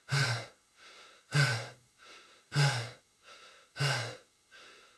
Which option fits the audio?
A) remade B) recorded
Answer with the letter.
A